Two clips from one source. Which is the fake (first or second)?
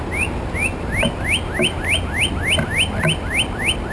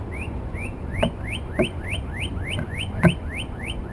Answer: second